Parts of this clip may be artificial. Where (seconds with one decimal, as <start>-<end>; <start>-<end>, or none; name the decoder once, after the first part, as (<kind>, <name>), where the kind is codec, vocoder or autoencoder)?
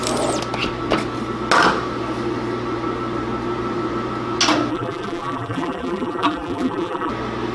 4.7-7.1 (vocoder, BigVGAN v2)